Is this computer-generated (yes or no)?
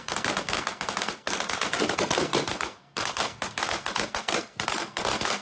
yes